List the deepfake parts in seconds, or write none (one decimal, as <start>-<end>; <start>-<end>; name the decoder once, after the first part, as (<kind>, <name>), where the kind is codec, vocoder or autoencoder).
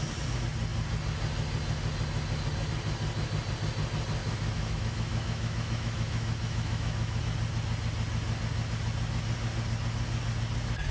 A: 4.2-7.2 (autoencoder, DAC-VAE)